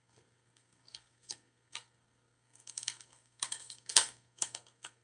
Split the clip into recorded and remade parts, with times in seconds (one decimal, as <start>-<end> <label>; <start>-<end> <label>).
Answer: 0.0-5.0 remade